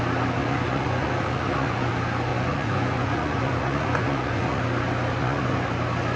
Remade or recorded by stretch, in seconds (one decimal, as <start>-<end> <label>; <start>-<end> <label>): 0.0-0.4 recorded; 0.4-1.9 remade; 1.9-2.3 recorded; 2.3-4.6 remade; 4.6-5.2 recorded; 5.2-5.7 remade; 5.7-6.2 recorded